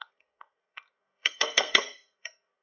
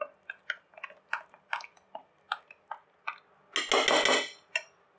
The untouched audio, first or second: second